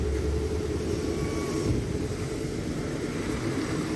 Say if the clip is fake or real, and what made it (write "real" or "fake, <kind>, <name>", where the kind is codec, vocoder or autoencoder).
fake, vocoder, BigVGAN v2